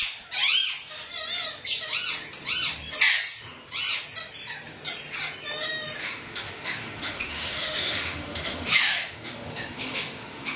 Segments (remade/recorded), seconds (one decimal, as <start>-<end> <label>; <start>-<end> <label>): 0.0-6.0 recorded; 6.0-10.6 remade